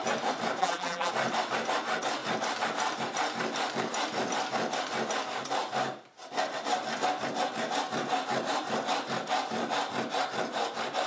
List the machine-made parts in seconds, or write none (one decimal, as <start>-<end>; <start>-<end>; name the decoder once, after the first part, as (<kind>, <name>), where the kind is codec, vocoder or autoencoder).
0.6-1.1 (vocoder, BigVGAN v2)